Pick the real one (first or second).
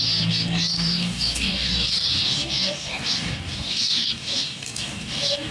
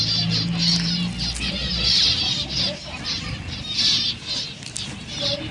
second